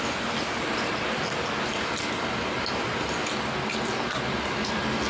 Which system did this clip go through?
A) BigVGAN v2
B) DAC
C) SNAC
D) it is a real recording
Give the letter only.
D